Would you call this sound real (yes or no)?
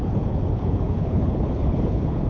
no